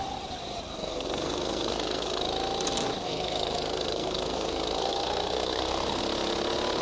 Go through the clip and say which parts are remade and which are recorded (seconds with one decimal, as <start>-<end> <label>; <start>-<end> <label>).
0.0-0.7 recorded; 0.7-2.2 remade; 2.2-3.0 recorded; 3.0-6.0 remade; 6.0-6.8 recorded